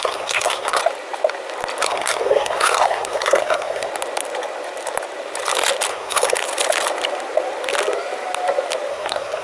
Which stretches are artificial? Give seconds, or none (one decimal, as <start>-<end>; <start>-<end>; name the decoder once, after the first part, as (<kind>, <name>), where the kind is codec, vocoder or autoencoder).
0.0-0.8 (codec, SNAC); 1.8-3.9; 5.9-6.4; 8.9-9.4